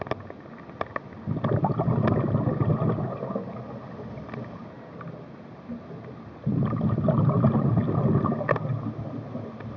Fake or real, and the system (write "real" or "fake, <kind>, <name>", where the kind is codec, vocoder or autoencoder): real